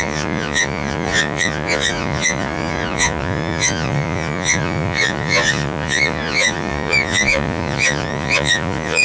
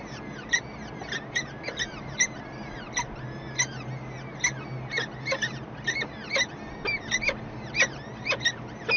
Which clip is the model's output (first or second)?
first